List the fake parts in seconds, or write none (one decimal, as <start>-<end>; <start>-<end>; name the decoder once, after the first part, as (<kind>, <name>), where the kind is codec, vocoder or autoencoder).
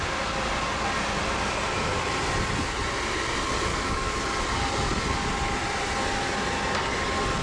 3.7-4.2 (codec, DAC)